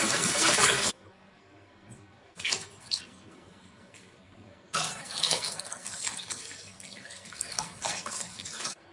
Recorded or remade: remade